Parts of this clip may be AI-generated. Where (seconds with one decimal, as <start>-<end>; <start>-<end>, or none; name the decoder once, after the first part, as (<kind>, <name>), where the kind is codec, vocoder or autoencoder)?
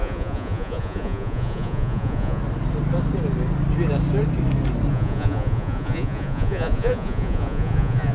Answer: 0.0-2.4 (vocoder, Vocos); 4.9-8.1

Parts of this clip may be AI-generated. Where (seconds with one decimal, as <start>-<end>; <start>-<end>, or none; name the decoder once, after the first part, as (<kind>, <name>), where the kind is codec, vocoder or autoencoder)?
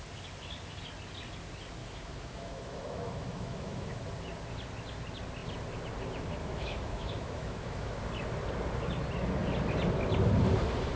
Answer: 1.8-4.0 (autoencoder, DAC-VAE); 6.4-8.0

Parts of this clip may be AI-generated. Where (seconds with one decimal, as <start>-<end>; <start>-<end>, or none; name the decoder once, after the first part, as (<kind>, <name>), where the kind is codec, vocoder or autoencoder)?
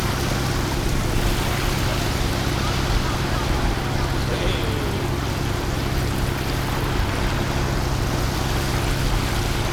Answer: none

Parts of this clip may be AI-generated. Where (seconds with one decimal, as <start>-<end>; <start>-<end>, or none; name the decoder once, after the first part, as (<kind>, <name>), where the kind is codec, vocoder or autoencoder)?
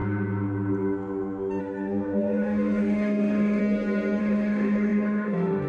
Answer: 1.6-3.6 (autoencoder, DAC-VAE); 4.2-5.7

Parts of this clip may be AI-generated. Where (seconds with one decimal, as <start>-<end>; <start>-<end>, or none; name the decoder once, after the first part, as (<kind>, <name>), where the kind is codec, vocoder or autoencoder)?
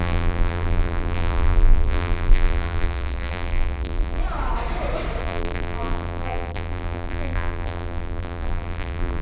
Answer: 0.0-4.2 (vocoder, BigVGAN v2); 5.2-9.2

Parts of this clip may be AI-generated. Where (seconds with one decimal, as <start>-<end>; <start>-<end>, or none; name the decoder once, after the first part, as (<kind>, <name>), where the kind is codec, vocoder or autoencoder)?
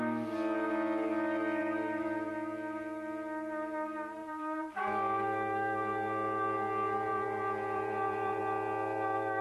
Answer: 1.6-2.3 (vocoder, BigVGAN v2); 4.2-4.7; 7.1-8.4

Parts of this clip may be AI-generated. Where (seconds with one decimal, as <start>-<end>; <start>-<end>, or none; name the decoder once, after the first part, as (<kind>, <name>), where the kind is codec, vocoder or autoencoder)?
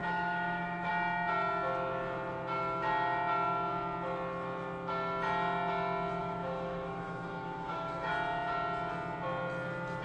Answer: 0.0-0.9 (autoencoder, DAC-VAE); 6.2-8.1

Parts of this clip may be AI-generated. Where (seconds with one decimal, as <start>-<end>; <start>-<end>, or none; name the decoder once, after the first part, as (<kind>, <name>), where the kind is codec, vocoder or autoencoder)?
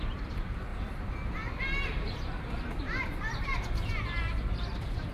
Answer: 0.0-5.1 (vocoder, BigVGAN v2)